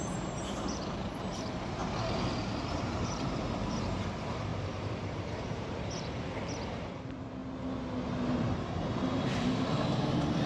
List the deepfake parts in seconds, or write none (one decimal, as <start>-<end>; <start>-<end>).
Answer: 0.0-1.8; 2.8-7.4; 8.2-10.5

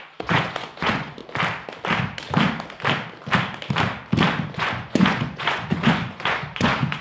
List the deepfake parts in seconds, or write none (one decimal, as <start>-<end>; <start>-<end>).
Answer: 0.0-1.2; 4.5-7.0

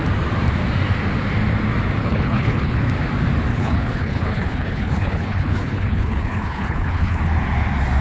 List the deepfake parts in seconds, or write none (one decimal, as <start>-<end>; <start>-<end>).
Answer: 2.0-2.9; 3.5-7.2

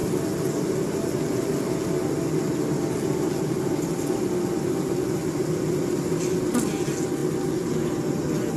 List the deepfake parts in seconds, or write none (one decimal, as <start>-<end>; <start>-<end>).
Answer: none